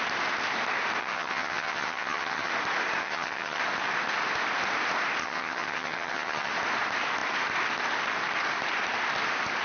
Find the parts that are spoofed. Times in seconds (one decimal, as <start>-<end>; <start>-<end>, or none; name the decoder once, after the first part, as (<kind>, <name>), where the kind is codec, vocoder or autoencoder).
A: 1.0-2.5 (vocoder, HiFi-GAN); 3.0-3.6; 5.2-6.5